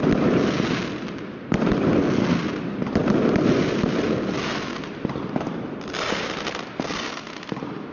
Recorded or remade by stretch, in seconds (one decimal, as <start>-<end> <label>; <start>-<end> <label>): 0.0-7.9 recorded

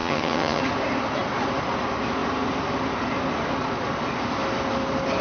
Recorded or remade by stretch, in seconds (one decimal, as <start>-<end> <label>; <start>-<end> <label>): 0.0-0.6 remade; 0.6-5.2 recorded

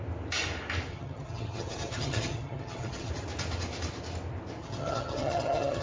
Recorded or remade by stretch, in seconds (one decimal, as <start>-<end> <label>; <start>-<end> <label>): 0.0-0.9 recorded; 0.9-3.1 remade; 3.1-4.6 recorded; 4.6-5.8 remade